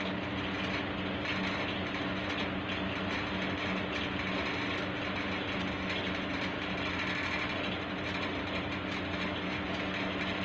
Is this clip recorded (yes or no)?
yes